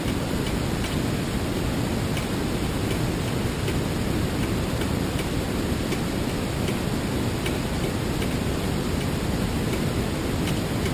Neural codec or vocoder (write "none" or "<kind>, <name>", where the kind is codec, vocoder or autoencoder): none